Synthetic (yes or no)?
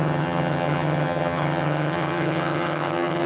yes